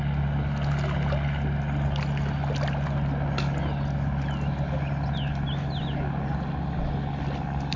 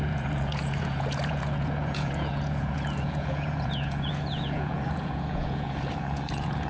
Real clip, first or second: first